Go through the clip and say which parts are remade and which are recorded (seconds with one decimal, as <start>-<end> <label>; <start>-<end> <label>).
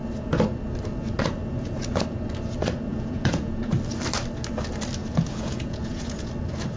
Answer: 0.0-2.9 recorded; 2.9-3.7 remade; 3.7-5.0 recorded; 5.0-6.3 remade; 6.3-6.8 recorded